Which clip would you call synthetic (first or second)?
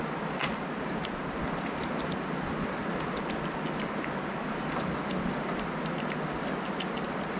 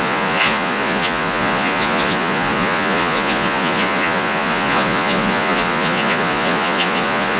second